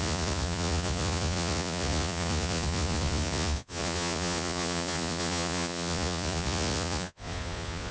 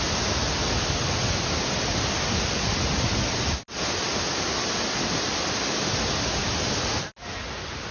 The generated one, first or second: first